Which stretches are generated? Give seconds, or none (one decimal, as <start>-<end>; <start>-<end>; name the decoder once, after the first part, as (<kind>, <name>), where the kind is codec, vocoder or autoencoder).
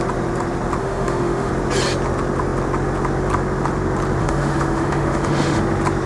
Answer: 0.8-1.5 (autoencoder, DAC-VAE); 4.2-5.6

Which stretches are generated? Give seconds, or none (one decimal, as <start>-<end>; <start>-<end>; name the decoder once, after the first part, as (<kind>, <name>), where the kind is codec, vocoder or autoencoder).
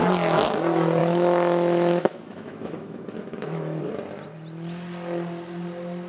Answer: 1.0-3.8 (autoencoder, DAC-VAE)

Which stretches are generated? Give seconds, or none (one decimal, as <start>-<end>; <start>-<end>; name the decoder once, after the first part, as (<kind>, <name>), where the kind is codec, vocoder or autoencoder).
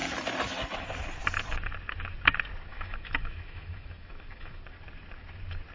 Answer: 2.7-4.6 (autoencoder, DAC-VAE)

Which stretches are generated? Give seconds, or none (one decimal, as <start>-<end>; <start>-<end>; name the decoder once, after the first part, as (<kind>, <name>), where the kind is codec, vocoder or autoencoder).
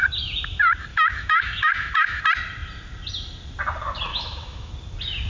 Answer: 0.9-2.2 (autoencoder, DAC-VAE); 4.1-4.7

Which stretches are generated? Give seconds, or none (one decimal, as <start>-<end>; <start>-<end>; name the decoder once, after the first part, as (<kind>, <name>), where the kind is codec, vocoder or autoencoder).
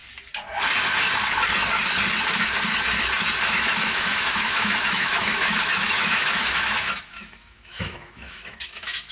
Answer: 3.5-9.1 (autoencoder, DAC-VAE)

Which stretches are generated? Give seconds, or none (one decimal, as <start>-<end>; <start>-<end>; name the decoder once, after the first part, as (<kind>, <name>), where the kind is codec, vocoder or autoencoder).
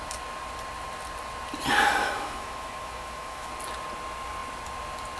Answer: 2.0-3.5 (autoencoder, DAC-VAE)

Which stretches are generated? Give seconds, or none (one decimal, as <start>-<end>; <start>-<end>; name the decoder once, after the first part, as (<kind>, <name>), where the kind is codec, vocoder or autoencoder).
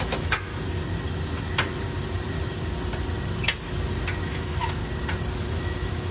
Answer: 0.0-0.5 (autoencoder, DAC-VAE); 4.2-4.8; 5.5-6.1